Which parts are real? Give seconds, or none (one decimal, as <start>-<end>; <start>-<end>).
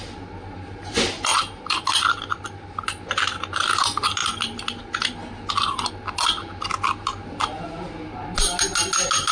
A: 0.0-9.3